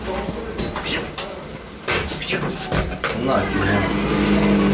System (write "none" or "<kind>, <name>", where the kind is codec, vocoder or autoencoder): none